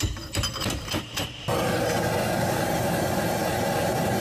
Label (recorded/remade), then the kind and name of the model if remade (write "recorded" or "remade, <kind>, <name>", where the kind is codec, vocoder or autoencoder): recorded